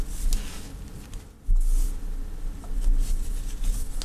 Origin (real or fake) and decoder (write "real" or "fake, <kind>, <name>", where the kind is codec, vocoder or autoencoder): real